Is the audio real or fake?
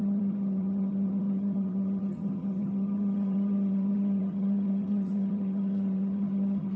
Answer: fake